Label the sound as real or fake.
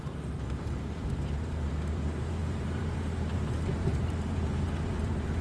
fake